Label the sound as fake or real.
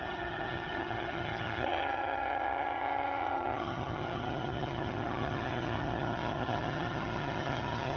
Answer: fake